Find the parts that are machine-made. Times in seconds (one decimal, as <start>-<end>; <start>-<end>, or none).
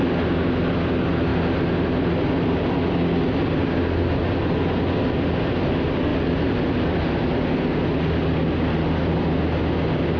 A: none